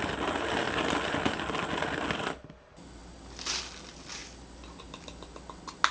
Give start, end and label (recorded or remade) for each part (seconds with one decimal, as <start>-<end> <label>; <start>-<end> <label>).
0.0-3.0 recorded; 3.0-3.6 remade; 3.6-4.2 recorded; 4.2-4.8 remade; 4.8-5.9 recorded